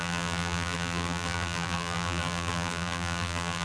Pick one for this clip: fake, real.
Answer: fake